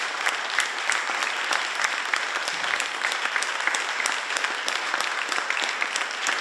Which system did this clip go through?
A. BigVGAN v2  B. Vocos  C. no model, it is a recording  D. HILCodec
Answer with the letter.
C